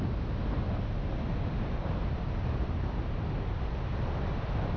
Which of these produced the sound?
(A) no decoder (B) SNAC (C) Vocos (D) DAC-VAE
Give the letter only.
A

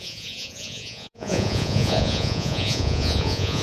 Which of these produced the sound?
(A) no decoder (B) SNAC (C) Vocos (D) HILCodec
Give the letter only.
C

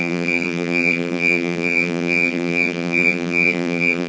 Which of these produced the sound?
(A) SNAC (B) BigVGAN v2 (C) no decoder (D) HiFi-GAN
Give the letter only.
B